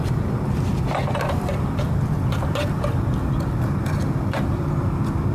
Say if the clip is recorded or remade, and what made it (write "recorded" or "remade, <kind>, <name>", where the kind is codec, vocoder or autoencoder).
recorded